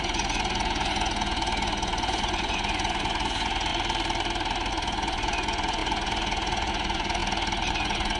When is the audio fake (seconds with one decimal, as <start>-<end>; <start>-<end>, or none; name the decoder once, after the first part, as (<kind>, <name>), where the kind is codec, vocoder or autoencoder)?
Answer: 0.0-3.7 (vocoder, Vocos); 4.7-7.2; 7.7-8.2